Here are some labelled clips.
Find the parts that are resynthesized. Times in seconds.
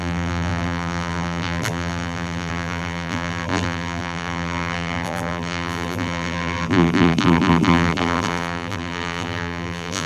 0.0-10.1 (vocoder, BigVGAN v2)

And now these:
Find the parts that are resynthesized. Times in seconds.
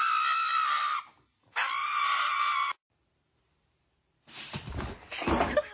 1.8-4.9 (vocoder, BigVGAN v2)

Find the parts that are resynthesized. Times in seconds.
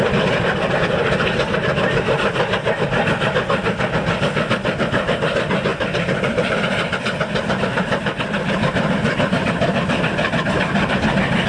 5.7-6.6 (vocoder, BigVGAN v2)